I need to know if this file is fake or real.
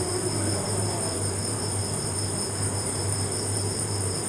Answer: fake